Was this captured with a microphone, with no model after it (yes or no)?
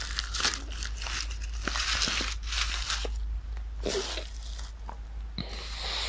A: yes